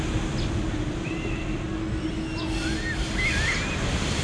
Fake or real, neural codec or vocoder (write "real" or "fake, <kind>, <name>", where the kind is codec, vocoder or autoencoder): real